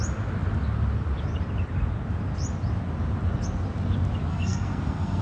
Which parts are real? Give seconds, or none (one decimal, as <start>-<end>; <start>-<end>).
0.0-4.3